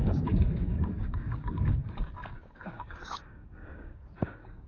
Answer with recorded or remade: remade